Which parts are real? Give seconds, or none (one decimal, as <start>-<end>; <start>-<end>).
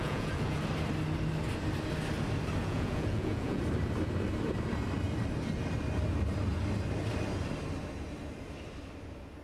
0.6-2.6; 3.6-9.4